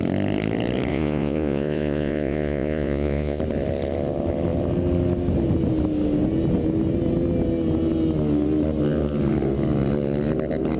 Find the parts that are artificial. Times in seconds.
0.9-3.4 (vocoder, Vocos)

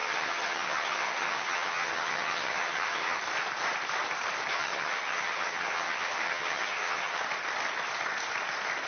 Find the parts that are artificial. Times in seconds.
0.0-3.2 (vocoder, HiFi-GAN); 4.5-7.2